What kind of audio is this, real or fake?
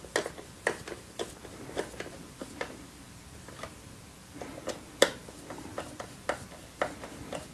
real